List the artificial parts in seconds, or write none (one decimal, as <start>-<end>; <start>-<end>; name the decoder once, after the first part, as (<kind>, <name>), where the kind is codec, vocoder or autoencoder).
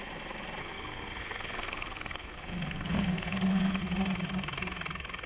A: 0.6-3.8 (codec, SNAC)